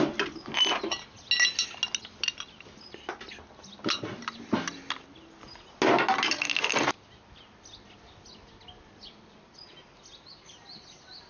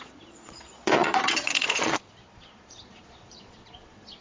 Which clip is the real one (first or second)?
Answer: first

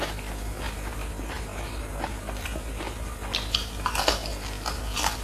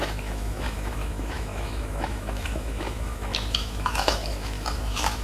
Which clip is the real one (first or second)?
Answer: first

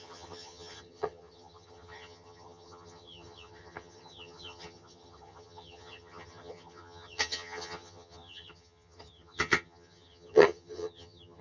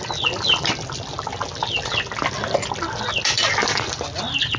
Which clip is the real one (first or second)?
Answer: second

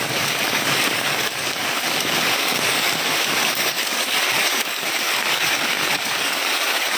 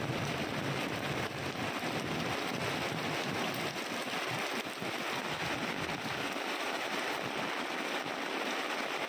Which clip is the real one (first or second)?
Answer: second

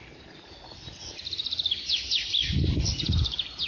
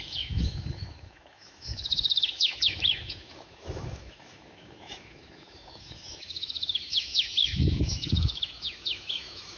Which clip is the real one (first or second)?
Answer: first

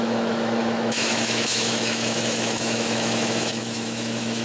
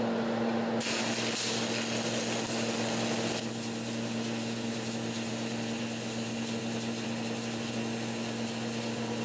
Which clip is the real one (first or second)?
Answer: second